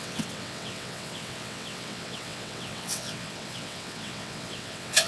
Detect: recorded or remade remade